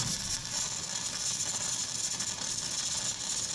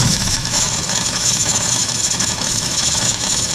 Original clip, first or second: first